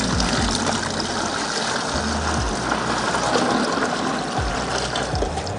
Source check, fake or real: real